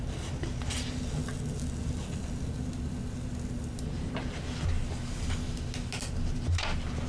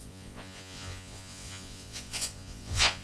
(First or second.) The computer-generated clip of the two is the second